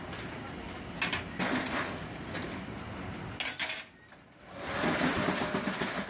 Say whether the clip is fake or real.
real